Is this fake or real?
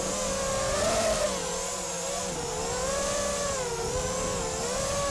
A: real